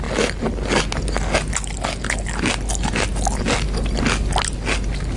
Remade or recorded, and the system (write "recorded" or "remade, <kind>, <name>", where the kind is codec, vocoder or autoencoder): recorded